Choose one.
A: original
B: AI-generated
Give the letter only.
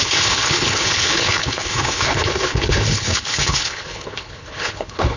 B